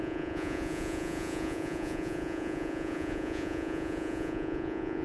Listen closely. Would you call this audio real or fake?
fake